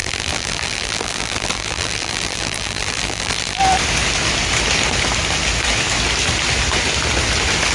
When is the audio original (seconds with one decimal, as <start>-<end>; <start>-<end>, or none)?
3.6-7.7